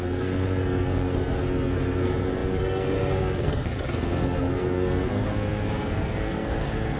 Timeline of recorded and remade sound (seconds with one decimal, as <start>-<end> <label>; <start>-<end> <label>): 0.0-7.0 remade